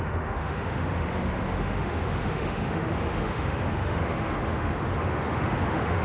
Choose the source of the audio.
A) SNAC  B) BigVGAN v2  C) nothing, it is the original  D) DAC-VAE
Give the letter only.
D